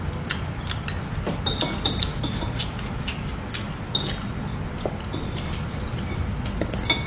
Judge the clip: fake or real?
real